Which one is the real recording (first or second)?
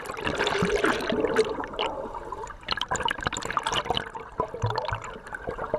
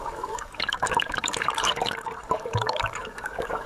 first